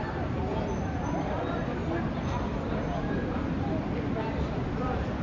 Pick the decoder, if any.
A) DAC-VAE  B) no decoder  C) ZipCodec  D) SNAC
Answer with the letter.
B